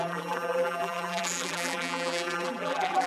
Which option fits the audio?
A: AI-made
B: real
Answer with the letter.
A